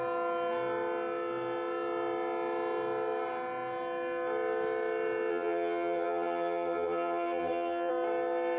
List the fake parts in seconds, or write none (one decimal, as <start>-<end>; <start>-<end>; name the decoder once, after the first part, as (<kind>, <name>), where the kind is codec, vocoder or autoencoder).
5.3-7.9 (vocoder, HiFi-GAN)